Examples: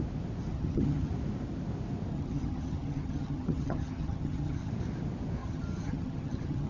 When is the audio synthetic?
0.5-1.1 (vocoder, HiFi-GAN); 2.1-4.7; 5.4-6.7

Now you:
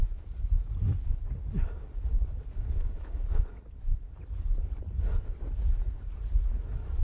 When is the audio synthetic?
2.1-3.5 (codec, HILCodec)